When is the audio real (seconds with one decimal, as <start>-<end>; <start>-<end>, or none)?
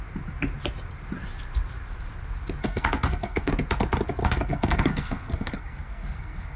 0.0-2.6; 3.5-4.2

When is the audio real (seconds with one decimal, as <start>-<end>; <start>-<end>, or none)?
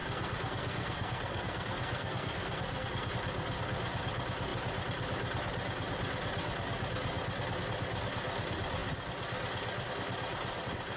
3.1-11.0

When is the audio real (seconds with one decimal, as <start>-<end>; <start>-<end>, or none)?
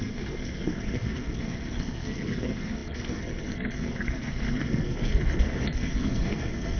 none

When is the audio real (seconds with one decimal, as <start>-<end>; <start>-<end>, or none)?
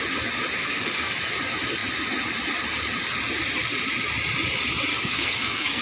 0.0-0.6; 1.1-4.9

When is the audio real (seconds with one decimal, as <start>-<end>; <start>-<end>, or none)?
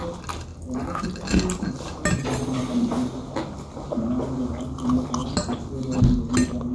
0.0-6.7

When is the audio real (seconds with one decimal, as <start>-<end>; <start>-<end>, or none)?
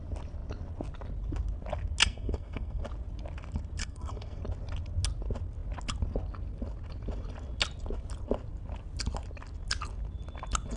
0.0-2.0; 2.8-3.8; 4.4-10.8